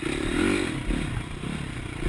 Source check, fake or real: real